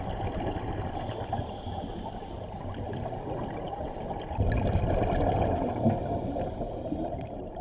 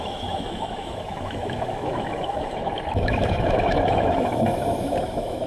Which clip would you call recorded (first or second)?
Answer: first